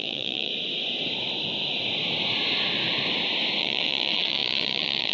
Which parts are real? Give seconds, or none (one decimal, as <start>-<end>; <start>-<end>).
0.5-3.6